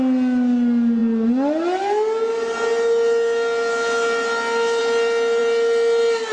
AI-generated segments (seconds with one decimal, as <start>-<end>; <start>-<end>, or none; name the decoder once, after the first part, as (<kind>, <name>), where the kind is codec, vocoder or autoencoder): none